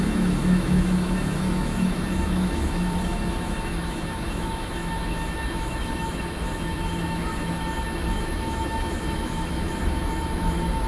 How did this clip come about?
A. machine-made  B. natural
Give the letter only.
A